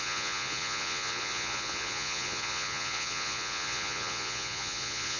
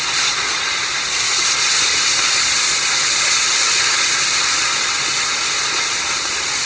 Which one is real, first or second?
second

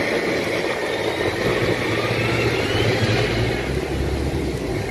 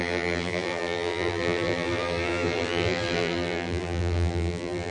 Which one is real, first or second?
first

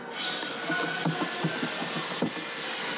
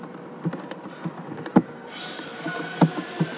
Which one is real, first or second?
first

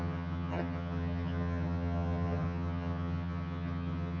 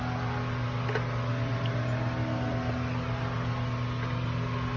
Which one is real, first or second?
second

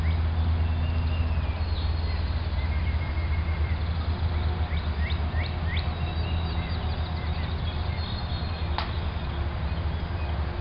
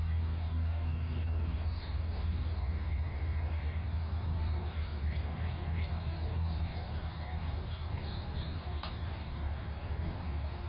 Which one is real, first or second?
first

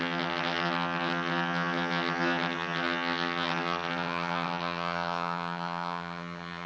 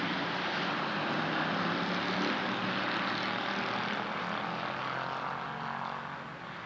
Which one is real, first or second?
second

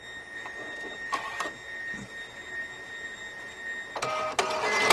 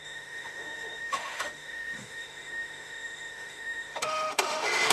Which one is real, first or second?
first